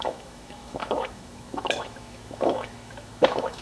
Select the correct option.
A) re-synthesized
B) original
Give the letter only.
A